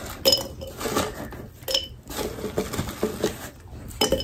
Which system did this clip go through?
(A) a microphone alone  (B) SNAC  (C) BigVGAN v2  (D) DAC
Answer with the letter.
A